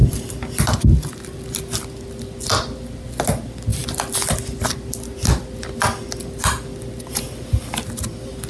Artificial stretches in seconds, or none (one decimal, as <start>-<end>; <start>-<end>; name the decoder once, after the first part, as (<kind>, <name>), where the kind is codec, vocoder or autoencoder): none